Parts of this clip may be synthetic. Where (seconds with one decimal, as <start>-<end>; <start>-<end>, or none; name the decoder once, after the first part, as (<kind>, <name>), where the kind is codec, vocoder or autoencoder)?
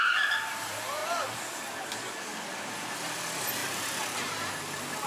3.6-4.5 (vocoder, BigVGAN v2)